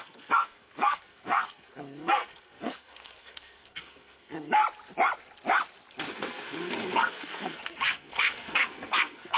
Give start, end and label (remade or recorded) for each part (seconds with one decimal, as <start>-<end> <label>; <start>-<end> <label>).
0.0-4.6 remade; 4.6-6.1 recorded; 6.1-9.4 remade